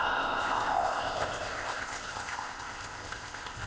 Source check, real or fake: fake